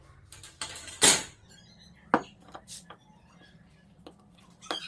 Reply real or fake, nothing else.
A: real